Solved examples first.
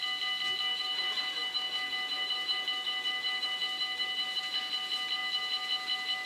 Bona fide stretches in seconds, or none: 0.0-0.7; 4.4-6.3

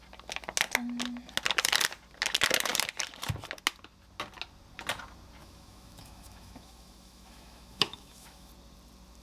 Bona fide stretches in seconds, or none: 0.0-5.4; 8.5-9.2